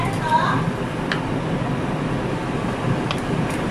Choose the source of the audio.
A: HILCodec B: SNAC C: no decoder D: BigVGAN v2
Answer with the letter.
D